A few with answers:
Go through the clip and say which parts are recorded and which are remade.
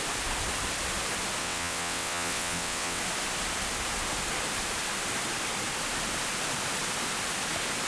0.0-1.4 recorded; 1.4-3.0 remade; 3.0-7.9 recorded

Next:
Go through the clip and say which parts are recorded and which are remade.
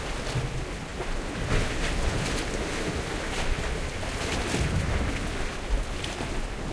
0.0-6.7 recorded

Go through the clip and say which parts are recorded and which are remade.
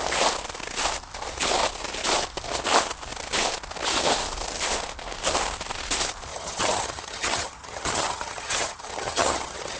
0.0-6.3 recorded; 6.3-9.8 remade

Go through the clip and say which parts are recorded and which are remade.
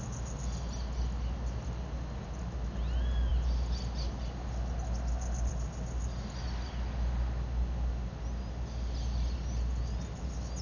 0.0-10.6 recorded